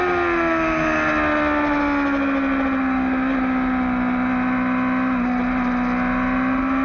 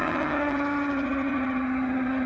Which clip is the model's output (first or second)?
second